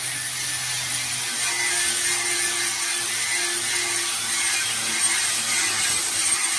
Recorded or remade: recorded